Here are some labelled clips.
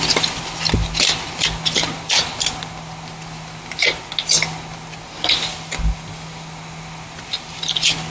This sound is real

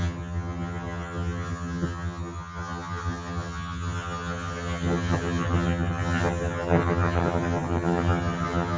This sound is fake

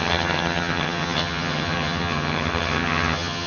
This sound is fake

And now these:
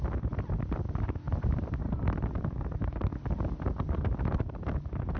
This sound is real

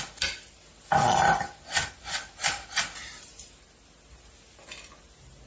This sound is real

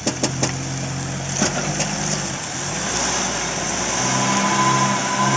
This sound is real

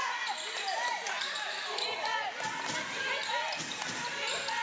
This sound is real